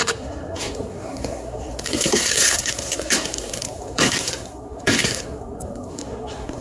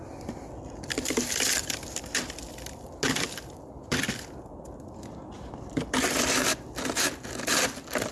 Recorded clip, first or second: second